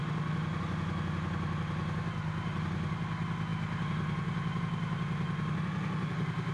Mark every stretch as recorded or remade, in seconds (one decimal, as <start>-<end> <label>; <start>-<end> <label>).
0.0-6.5 recorded